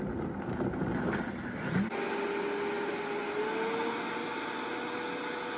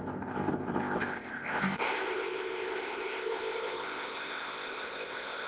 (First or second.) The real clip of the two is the first